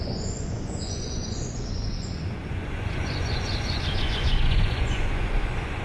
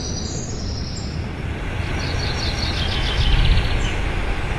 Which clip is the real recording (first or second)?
second